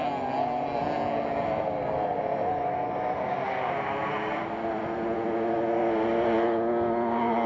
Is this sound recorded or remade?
recorded